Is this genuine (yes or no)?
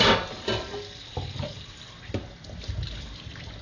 yes